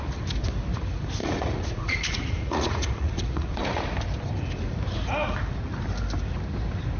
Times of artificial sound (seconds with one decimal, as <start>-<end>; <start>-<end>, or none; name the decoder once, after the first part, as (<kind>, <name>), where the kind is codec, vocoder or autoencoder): 1.2-3.8 (vocoder, Vocos)